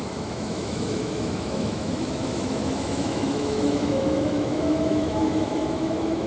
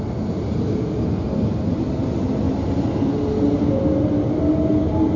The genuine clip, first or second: second